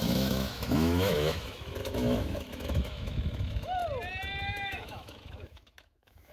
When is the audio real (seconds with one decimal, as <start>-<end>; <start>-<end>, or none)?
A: 3.8-4.4